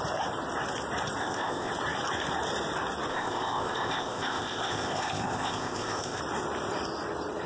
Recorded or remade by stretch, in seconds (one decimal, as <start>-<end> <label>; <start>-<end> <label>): 0.0-1.2 recorded; 1.2-1.7 remade; 1.7-3.1 recorded; 3.1-6.2 remade; 6.2-7.5 recorded